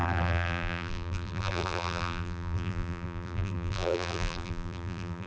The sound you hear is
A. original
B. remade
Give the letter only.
B